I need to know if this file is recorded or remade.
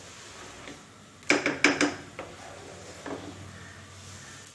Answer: recorded